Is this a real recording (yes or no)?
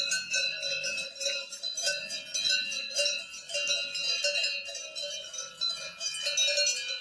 yes